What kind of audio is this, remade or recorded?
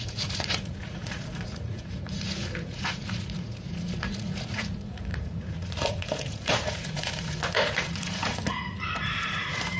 remade